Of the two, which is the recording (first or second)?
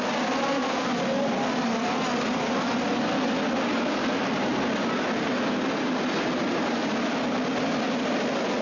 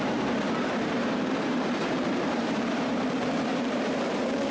first